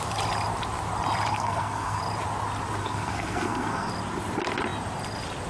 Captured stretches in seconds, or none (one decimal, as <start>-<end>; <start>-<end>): 0.0-1.3; 2.0-2.8; 3.9-5.5